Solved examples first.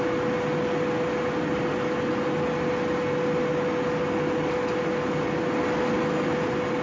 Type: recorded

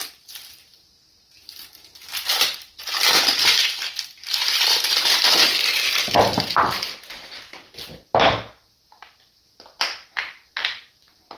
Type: recorded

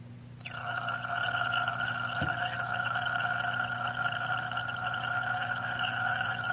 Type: recorded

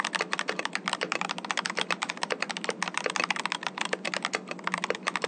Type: recorded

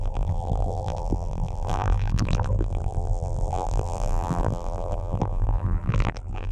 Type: remade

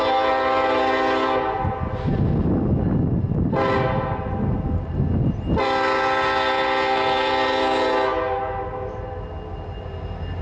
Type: recorded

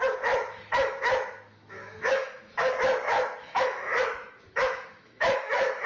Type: remade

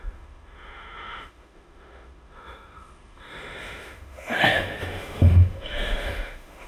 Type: remade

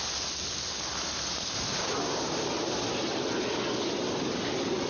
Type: recorded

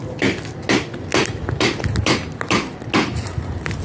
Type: recorded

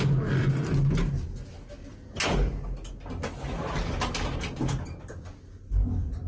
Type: recorded